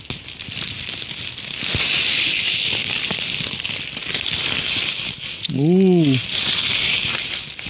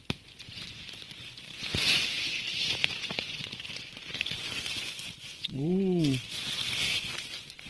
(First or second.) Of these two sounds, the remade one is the second